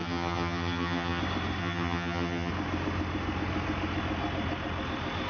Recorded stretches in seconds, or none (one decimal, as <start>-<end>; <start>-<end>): 1.2-1.6; 2.5-5.3